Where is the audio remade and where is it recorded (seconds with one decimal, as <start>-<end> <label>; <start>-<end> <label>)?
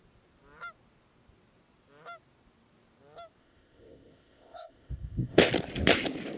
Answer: 0.0-3.4 recorded; 3.4-5.5 remade; 5.5-6.4 recorded